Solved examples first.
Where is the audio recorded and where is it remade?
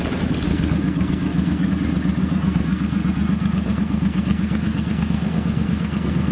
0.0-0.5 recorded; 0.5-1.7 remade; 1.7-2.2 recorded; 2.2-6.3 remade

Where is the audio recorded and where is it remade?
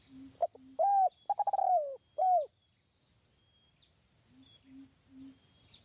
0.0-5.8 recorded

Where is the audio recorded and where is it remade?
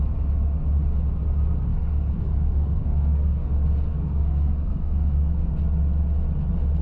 0.0-1.7 recorded; 1.7-3.5 remade; 3.5-3.9 recorded; 3.9-5.5 remade; 5.5-6.8 recorded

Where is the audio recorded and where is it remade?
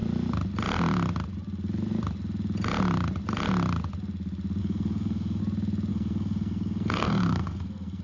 0.0-4.6 recorded; 4.6-5.4 remade; 5.4-5.9 recorded; 5.9-8.0 remade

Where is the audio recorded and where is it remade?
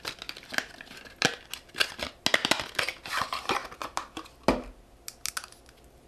0.0-6.1 recorded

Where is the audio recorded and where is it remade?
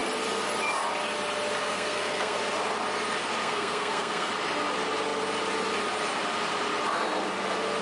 0.0-1.6 recorded; 1.6-2.4 remade; 2.4-3.4 recorded; 3.4-4.3 remade; 4.3-7.8 recorded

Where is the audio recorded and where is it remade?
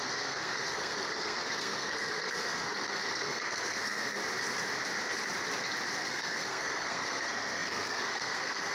0.0-4.2 remade; 4.2-6.0 recorded; 6.0-8.7 remade